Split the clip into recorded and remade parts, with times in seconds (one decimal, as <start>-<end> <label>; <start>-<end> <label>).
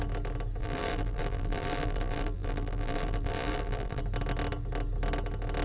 0.0-0.6 recorded; 0.6-4.0 remade; 4.0-5.6 recorded